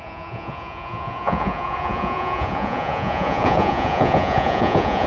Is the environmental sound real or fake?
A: fake